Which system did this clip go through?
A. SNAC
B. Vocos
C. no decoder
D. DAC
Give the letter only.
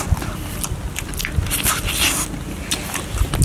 C